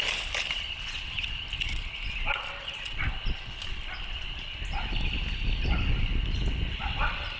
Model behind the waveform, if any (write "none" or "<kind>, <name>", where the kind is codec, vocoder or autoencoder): none